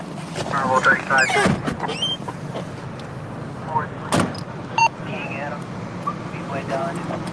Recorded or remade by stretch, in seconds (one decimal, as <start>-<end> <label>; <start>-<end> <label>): 0.0-7.3 recorded